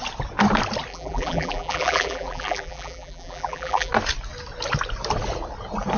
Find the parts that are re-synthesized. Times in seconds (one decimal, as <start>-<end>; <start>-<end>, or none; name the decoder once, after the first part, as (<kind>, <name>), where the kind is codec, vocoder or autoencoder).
0.9-3.9 (vocoder, BigVGAN v2)